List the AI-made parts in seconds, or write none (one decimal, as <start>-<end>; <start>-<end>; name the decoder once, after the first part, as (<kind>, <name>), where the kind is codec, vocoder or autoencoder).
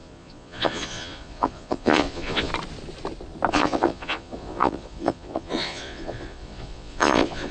0.0-2.5 (vocoder, Vocos); 3.5-7.5